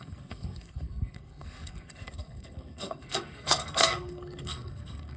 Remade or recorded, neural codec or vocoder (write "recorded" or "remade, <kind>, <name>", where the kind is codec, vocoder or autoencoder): remade, codec, SNAC